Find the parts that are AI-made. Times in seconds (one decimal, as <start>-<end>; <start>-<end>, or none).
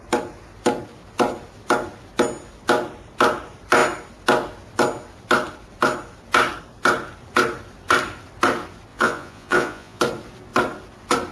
8.9-10.0